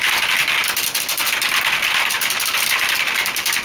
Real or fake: real